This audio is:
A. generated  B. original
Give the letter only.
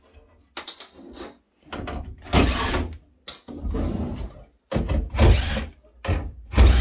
B